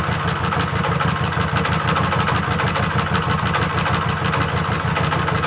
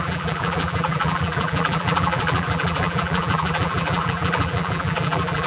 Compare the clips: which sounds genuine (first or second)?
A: first